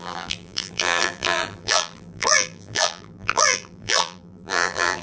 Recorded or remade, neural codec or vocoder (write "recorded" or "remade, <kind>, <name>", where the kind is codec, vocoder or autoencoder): remade, vocoder, BigVGAN v2